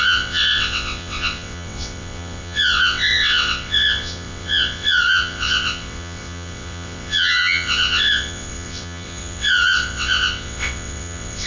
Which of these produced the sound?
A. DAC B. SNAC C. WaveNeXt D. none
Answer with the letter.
C